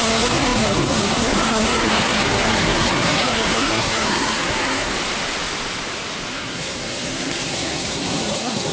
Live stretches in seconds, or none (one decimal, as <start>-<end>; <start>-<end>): 4.9-6.3